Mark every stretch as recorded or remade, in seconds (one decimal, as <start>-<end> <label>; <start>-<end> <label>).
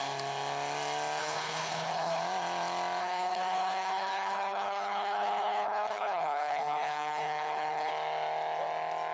0.0-1.2 recorded; 1.2-2.2 remade; 2.2-3.0 recorded; 3.0-7.9 remade; 7.9-9.1 recorded